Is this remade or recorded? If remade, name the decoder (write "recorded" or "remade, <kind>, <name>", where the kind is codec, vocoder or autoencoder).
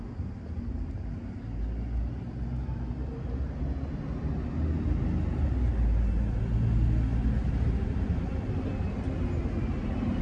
recorded